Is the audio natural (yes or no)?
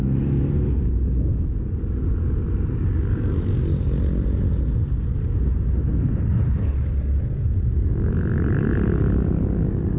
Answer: yes